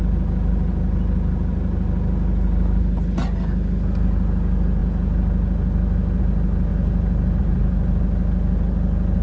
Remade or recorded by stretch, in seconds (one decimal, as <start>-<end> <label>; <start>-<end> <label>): 0.0-9.2 recorded